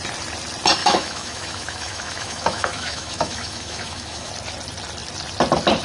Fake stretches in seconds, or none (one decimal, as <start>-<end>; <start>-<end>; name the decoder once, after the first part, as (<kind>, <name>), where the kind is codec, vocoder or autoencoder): 0.8-4.3 (autoencoder, DAC-VAE)